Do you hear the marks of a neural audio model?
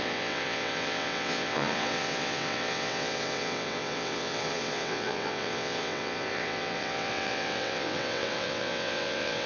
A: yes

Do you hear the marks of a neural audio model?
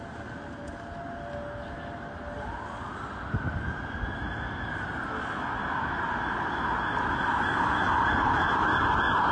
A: no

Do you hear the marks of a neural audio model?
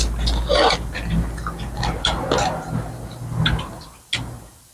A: no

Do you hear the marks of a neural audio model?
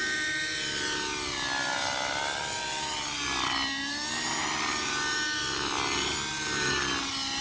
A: no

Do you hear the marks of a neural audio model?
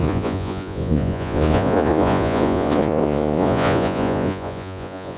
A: yes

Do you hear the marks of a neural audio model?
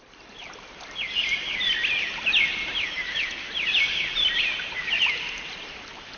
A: yes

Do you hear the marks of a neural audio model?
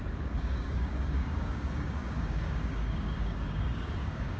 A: yes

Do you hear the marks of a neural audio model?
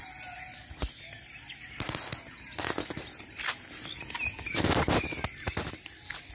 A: no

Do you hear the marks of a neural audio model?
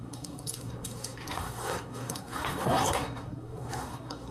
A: yes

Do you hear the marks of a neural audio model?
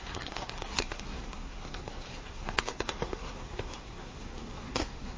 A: yes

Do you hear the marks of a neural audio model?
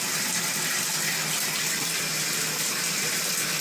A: no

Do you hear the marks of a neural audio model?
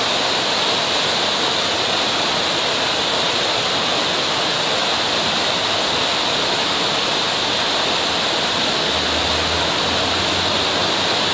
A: no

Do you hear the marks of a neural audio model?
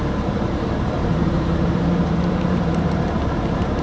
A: yes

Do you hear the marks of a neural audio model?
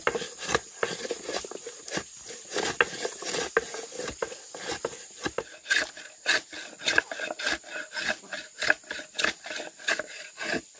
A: no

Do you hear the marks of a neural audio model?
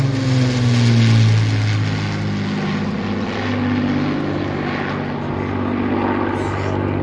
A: no